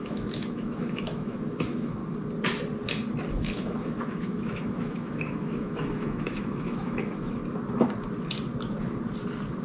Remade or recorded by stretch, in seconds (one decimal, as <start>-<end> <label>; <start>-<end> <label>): 0.0-2.0 remade; 2.0-3.3 recorded; 3.3-7.4 remade; 7.4-9.6 recorded